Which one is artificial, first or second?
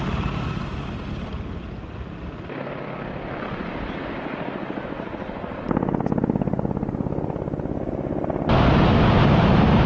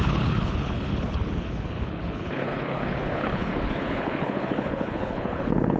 second